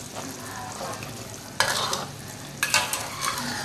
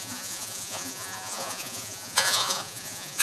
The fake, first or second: second